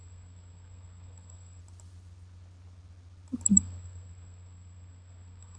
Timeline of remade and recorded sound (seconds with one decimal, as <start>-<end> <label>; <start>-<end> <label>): 0.0-1.6 remade; 1.6-3.5 recorded; 3.5-5.6 remade